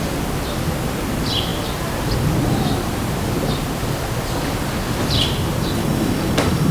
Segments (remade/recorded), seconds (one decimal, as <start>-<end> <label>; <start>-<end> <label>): 0.0-5.8 recorded; 5.8-6.7 remade